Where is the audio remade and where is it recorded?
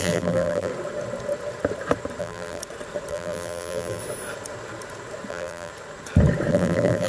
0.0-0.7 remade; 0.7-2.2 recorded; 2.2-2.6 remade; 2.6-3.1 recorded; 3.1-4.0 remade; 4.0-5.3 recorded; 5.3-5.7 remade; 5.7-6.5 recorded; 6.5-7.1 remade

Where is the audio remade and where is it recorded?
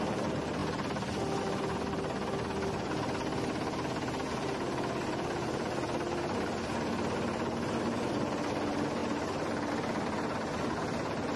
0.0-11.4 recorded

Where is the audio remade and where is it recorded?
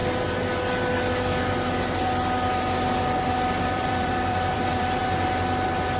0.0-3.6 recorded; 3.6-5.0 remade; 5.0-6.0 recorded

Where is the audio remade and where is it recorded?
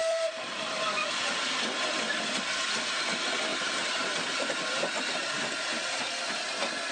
0.0-1.4 remade; 1.4-3.5 recorded; 3.5-4.6 remade; 4.6-6.9 recorded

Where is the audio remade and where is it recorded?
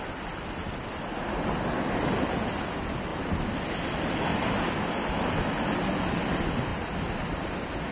0.0-3.1 recorded; 3.1-4.7 remade; 4.7-7.9 recorded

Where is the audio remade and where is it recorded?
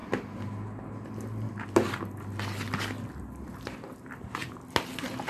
0.0-3.2 recorded; 3.2-4.4 remade; 4.4-5.3 recorded